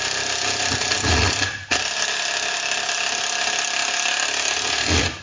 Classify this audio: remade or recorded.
recorded